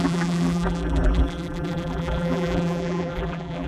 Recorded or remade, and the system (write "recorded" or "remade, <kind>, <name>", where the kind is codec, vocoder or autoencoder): remade, vocoder, BigVGAN v2